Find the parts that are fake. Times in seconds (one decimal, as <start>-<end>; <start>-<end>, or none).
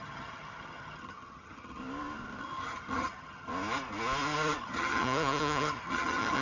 0.0-1.8; 2.4-3.5; 4.6-6.4